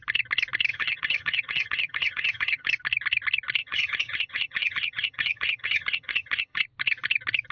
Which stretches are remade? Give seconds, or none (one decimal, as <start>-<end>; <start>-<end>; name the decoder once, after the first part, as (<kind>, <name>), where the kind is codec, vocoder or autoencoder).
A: 0.7-2.7 (vocoder, HiFi-GAN); 3.6-6.6